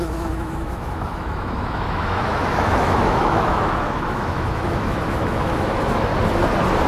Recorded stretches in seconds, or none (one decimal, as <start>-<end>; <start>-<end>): 6.1-6.9